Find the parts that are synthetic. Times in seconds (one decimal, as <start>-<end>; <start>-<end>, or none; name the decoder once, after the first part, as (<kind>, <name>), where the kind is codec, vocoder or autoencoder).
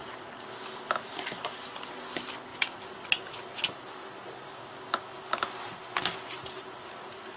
none